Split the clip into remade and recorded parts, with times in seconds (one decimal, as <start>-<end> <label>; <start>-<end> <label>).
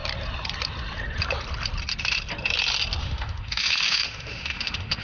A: 0.0-3.0 recorded; 3.0-5.0 remade